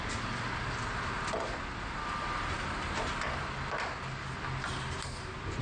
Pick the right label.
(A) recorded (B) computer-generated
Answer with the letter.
A